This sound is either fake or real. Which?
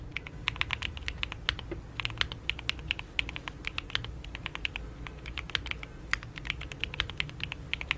real